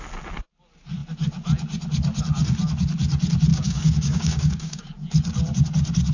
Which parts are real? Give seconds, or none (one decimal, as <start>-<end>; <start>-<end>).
0.0-3.5; 4.8-6.1